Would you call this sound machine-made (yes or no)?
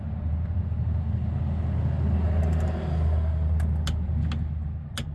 no